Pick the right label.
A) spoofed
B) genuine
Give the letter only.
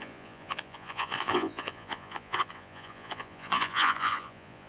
A